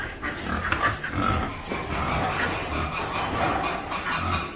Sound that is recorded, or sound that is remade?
recorded